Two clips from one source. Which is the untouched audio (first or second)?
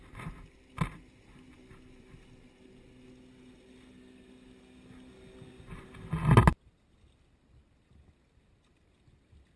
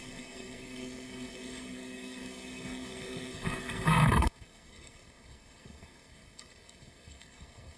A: first